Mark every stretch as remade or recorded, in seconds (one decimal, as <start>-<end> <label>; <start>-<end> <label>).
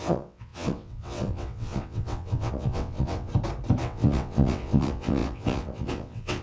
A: 0.0-3.3 remade; 3.3-3.8 recorded; 3.8-6.4 remade